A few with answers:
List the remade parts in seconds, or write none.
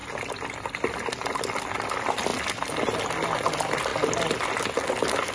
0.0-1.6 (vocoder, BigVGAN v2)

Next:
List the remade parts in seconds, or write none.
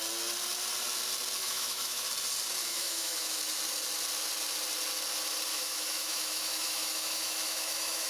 1.4-2.1 (autoencoder, DAC-VAE); 2.6-3.4; 5.5-8.1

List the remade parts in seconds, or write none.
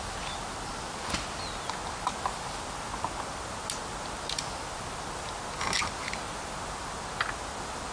none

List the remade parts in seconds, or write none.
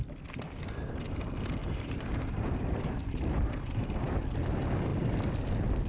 1.6-4.1 (vocoder, BigVGAN v2)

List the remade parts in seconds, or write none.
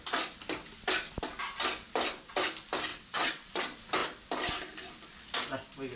2.9-3.6 (vocoder, WaveNeXt)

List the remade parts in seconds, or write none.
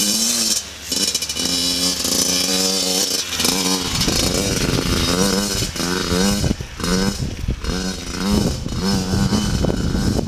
none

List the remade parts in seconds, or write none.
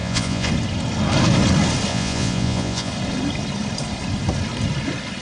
0.0-0.5 (vocoder, Vocos); 1.9-2.9